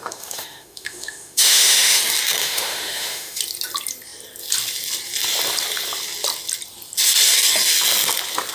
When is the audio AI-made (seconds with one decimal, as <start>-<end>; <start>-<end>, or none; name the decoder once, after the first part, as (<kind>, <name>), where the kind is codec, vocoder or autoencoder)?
0.0-2.0 (autoencoder, DAC-VAE); 2.4-3.4